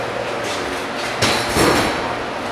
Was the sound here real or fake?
real